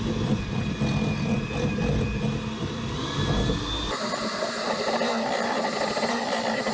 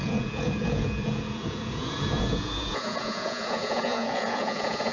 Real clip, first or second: first